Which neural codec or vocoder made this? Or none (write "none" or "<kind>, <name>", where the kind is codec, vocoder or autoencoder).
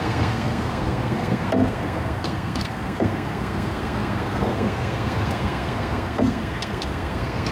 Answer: codec, SNAC